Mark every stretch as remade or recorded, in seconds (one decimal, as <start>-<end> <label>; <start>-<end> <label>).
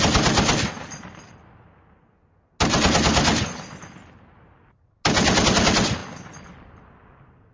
0.0-7.5 recorded